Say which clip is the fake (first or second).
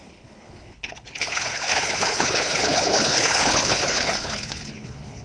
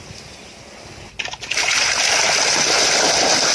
first